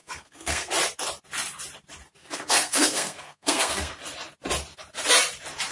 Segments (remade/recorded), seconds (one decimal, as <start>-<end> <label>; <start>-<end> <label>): 0.0-0.7 remade; 0.7-2.2 recorded; 2.2-3.9 remade; 3.9-5.7 recorded